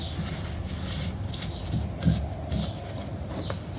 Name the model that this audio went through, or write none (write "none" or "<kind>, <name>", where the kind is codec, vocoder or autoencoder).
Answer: none